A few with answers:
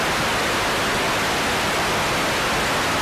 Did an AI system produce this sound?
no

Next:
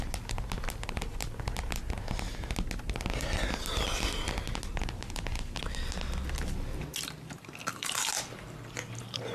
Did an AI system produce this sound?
no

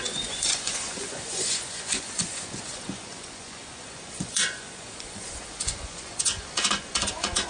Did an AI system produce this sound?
yes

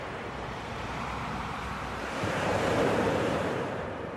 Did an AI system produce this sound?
yes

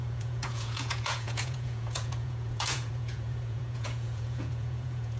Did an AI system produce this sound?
yes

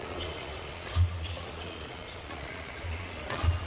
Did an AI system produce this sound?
yes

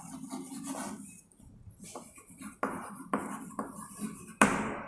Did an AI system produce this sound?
no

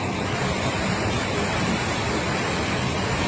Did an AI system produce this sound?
yes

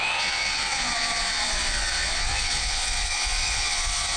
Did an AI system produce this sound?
yes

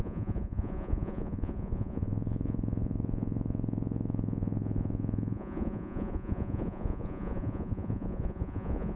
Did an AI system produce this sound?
yes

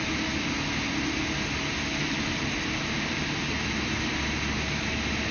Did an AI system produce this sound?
no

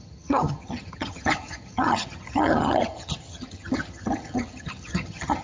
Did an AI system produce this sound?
yes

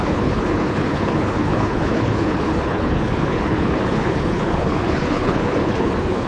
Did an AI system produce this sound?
yes